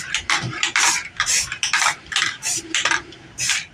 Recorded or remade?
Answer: remade